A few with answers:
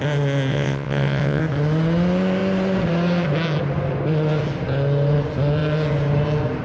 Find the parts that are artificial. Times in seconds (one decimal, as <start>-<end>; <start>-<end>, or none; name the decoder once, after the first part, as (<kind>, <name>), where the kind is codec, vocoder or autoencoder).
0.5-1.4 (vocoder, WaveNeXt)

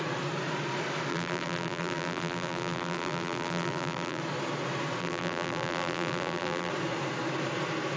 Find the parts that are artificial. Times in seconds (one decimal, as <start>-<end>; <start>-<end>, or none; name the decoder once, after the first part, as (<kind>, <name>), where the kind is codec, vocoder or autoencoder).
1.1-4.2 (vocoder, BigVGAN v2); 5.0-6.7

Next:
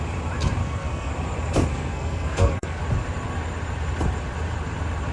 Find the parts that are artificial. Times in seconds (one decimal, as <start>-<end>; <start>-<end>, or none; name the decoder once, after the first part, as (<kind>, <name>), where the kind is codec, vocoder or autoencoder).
0.6-1.1 (codec, SNAC); 1.7-2.8

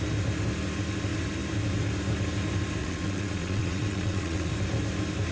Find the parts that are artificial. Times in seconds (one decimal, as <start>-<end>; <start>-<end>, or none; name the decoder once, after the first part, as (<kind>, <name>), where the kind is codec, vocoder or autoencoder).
2.8-4.5 (vocoder, WaveNeXt)

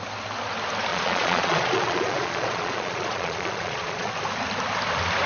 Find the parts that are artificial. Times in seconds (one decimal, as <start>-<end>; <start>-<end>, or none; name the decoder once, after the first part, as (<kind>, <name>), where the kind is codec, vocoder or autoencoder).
0.9-4.1 (vocoder, Vocos)

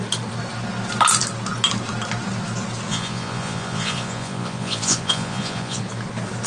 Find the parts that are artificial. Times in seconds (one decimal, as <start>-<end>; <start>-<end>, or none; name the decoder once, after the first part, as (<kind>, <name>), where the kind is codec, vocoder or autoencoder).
2.9-5.8 (vocoder, Vocos)